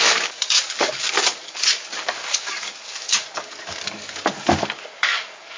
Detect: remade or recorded remade